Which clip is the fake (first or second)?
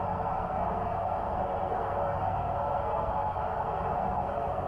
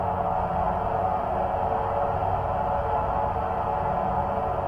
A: first